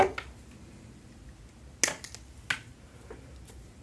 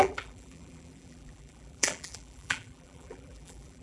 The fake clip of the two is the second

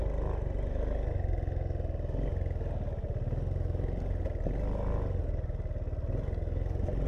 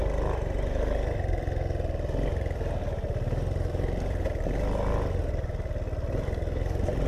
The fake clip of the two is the second